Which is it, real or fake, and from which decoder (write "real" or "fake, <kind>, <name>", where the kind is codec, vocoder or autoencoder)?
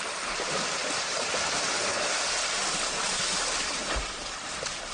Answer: real